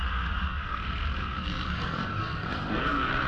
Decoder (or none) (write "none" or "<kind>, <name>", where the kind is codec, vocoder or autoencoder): codec, SNAC